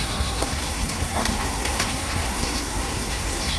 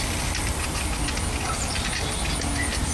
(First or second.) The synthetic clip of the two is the first